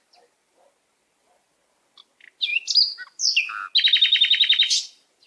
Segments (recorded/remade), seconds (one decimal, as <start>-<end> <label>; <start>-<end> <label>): 0.0-4.1 recorded; 4.1-5.3 remade